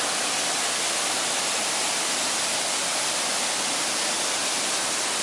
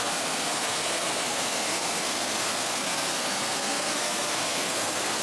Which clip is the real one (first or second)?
first